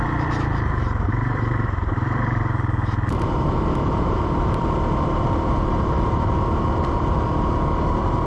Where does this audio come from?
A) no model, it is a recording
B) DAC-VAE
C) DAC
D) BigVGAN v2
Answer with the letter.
D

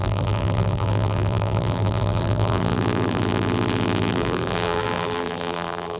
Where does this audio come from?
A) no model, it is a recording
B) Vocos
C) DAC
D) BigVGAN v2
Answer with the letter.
D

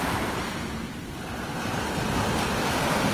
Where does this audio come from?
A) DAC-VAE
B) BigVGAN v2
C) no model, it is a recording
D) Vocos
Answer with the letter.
C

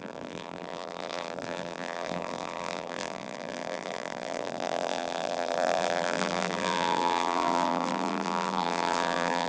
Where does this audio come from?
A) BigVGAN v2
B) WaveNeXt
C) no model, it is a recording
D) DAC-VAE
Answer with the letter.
A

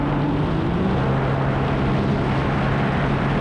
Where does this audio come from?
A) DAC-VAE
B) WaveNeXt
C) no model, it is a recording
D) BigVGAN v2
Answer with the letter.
C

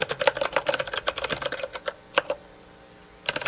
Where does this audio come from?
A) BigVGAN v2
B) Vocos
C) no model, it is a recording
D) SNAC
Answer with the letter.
C